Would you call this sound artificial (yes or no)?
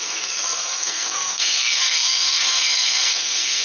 yes